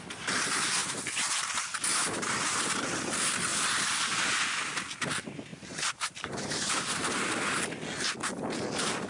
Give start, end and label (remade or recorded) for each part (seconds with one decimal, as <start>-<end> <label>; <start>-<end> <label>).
0.0-1.9 recorded; 1.9-2.6 remade; 2.6-5.5 recorded; 5.5-6.8 remade; 6.8-9.1 recorded